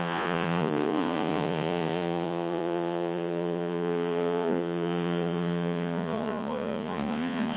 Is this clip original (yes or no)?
no